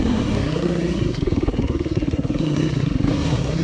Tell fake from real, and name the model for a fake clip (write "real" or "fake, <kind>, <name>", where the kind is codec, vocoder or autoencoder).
fake, codec, SNAC